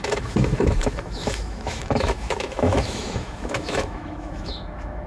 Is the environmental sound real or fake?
fake